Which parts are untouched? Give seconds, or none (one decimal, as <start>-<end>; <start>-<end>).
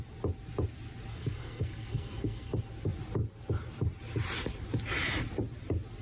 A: 0.0-1.1; 2.5-6.0